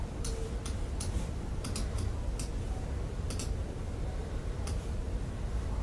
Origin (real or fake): fake